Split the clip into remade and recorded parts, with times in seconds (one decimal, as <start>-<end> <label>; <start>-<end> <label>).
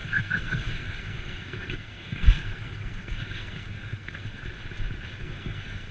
0.0-4.4 remade; 4.4-5.2 recorded; 5.2-5.9 remade